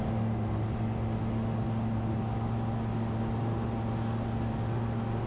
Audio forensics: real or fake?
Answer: real